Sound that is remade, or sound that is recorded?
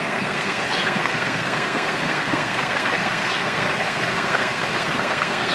remade